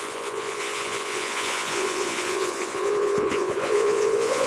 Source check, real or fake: fake